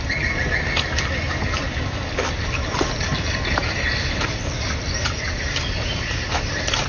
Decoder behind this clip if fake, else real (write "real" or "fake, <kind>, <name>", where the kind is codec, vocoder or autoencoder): real